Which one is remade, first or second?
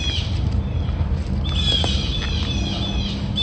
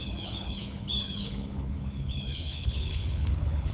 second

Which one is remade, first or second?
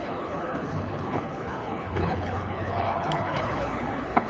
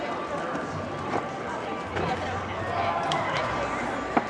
first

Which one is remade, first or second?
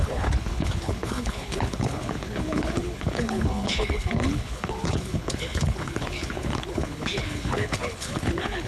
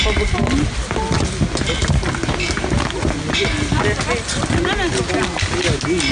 first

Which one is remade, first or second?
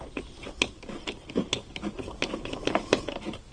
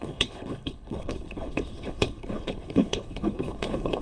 second